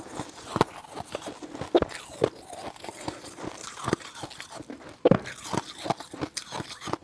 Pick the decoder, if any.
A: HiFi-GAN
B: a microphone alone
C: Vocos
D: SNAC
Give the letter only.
B